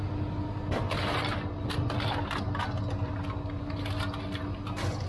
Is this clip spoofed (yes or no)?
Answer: no